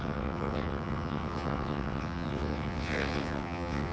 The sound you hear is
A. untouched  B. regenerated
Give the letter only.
B